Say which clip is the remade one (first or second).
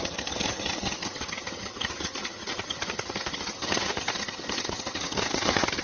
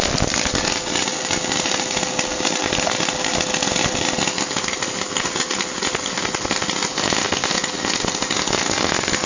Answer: first